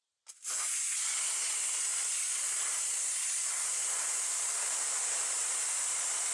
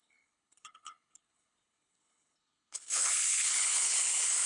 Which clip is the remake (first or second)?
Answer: second